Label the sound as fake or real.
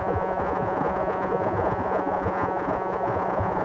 fake